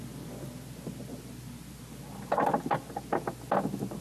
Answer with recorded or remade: recorded